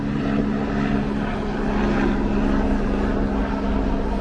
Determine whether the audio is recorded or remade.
recorded